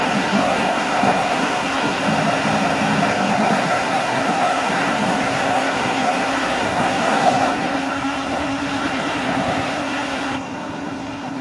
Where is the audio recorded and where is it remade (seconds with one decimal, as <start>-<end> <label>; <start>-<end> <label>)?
0.0-2.0 remade; 2.0-3.1 recorded; 3.1-11.4 remade

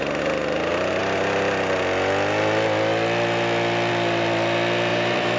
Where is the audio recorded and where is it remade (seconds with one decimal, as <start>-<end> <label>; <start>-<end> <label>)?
0.0-4.9 recorded; 4.9-5.4 remade

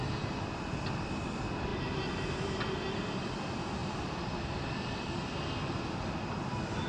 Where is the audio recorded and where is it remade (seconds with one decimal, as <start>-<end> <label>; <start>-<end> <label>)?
0.0-6.9 recorded

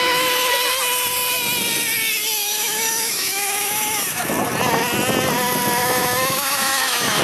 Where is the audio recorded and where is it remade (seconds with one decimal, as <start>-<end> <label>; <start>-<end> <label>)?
0.0-2.4 recorded; 2.4-4.3 remade; 4.3-5.8 recorded; 5.8-7.2 remade

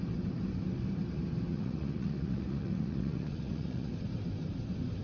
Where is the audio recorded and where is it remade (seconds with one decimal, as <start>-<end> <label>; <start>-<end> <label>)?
0.0-1.5 recorded; 1.5-3.9 remade; 3.9-5.0 recorded